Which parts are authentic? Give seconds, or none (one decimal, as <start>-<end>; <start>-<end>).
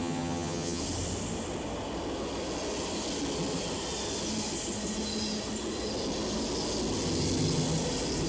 0.8-8.3